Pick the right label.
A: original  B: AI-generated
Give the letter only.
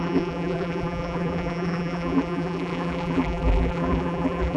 B